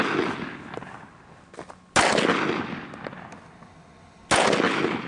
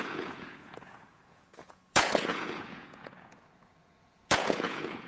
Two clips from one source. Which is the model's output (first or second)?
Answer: second